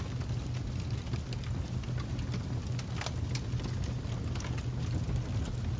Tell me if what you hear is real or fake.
real